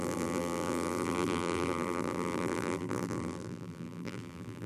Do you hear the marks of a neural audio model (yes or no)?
yes